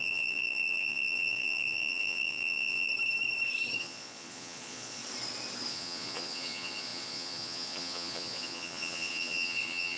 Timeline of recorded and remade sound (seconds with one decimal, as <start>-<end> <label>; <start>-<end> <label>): 0.0-2.9 remade; 2.9-3.8 recorded; 3.8-5.0 remade; 5.0-5.7 recorded; 5.7-10.0 remade